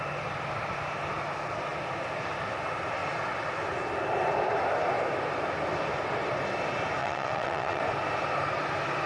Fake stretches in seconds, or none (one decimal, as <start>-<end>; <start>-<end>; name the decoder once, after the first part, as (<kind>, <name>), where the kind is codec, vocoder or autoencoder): 7.0-7.8 (vocoder, WaveNeXt)